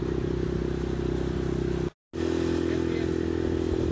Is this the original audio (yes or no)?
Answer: yes